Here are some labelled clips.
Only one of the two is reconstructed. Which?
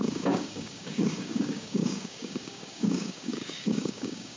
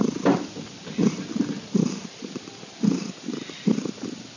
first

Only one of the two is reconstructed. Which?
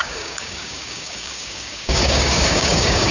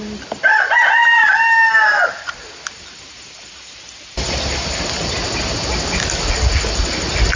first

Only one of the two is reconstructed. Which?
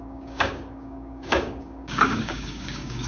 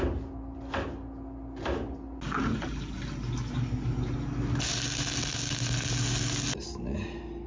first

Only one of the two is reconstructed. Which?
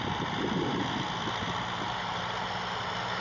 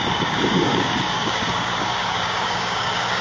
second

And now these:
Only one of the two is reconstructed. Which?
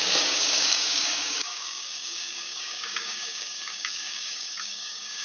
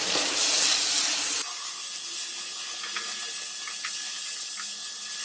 first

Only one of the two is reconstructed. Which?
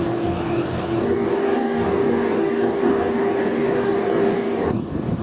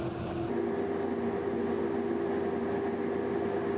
first